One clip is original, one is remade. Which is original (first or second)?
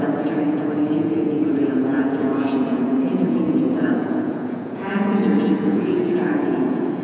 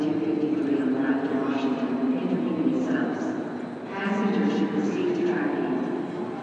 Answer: second